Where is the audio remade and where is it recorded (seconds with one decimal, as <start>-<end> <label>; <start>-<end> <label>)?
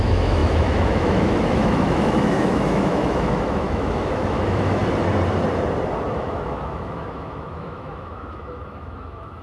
0.0-4.8 remade; 4.8-6.2 recorded; 6.2-9.4 remade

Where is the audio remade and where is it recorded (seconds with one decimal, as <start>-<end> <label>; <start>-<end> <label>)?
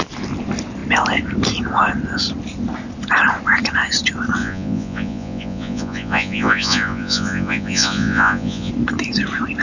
0.0-4.4 recorded; 4.4-8.7 remade; 8.7-9.6 recorded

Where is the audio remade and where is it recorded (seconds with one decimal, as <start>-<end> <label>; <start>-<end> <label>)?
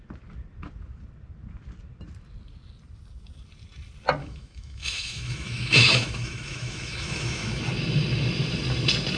0.0-4.2 recorded; 4.2-7.6 remade; 7.6-9.2 recorded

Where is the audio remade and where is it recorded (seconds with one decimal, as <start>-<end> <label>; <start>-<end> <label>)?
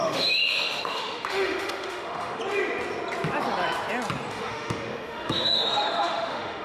0.0-2.4 remade; 2.4-4.3 recorded; 4.3-6.6 remade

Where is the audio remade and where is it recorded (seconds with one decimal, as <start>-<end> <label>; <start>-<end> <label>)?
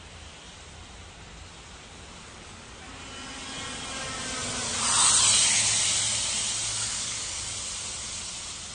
0.0-2.3 recorded; 2.3-2.8 remade; 2.8-6.7 recorded; 6.7-7.4 remade; 7.4-8.7 recorded